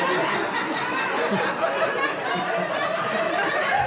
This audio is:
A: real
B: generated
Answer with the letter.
A